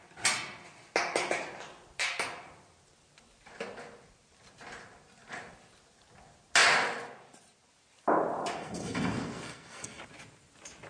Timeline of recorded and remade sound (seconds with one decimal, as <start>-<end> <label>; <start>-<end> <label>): 0.0-8.6 recorded; 8.6-10.0 remade; 10.0-10.9 recorded